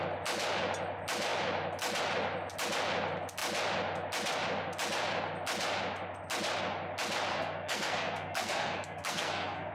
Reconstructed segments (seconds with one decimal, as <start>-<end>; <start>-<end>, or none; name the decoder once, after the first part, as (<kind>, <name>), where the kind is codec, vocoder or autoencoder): 7.3-9.7 (codec, SNAC)